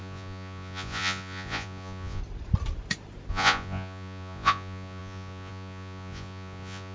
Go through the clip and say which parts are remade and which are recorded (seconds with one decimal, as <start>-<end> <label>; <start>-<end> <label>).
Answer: 0.0-2.2 remade; 2.2-3.3 recorded; 3.3-6.9 remade